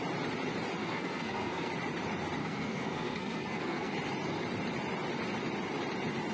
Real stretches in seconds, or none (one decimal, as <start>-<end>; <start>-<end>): 0.0-0.8; 1.7-2.4; 3.9-6.3